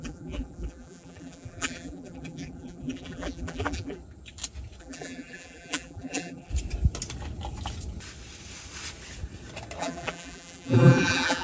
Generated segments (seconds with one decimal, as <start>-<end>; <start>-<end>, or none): 0.0-4.0; 4.8-6.5; 9.8-11.4